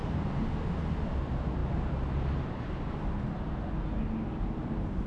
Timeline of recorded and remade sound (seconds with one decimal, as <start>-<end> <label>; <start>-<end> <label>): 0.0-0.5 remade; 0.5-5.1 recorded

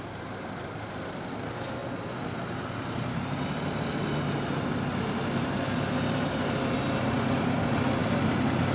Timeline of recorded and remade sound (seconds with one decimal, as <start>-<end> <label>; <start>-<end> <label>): 0.0-8.0 recorded; 8.0-8.7 remade

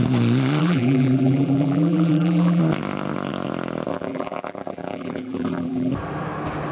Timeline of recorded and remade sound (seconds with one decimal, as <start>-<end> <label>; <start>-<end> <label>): 0.0-0.6 recorded; 0.6-2.6 remade; 2.6-3.9 recorded; 3.9-5.9 remade; 5.9-6.7 recorded

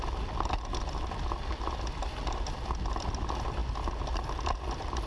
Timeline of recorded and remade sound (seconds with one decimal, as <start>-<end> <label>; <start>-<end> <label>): 0.0-5.1 recorded

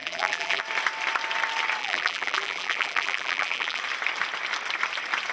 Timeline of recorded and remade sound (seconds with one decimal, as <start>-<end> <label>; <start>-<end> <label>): 0.0-0.6 remade; 0.6-1.8 recorded; 1.8-3.8 remade; 3.8-5.3 recorded